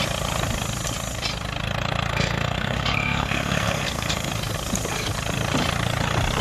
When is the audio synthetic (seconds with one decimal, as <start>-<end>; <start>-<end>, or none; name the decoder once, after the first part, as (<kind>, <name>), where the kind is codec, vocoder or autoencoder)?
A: 2.1-4.3 (codec, SNAC)